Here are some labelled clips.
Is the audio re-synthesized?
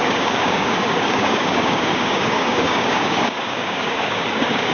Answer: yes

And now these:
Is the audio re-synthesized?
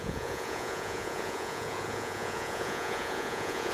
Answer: yes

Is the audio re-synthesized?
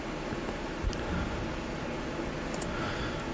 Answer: no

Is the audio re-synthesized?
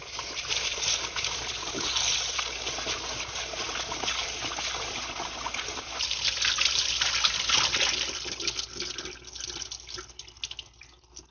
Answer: no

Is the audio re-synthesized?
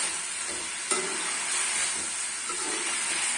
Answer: no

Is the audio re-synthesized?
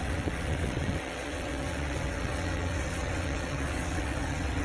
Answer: yes